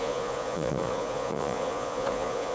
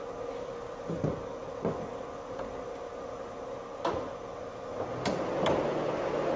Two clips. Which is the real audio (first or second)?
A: second